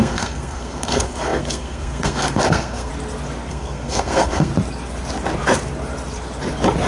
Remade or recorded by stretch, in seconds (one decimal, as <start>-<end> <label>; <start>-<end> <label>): 0.0-2.9 remade; 2.9-3.5 recorded; 3.5-4.5 remade; 4.5-6.9 recorded